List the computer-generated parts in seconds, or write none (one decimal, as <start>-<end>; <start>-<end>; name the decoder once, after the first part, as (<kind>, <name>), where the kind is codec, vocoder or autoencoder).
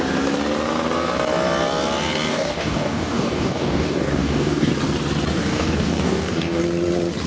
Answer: 2.3-4.7 (codec, DAC); 5.4-6.6